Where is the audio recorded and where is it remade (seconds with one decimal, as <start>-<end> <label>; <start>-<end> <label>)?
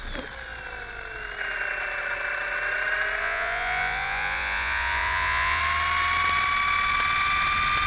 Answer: 0.0-3.2 recorded; 3.2-5.6 remade; 5.6-7.9 recorded